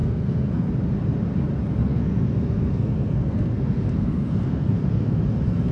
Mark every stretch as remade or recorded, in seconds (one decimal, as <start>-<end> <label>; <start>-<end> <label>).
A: 0.0-0.7 remade; 0.7-1.8 recorded; 1.8-5.2 remade; 5.2-5.7 recorded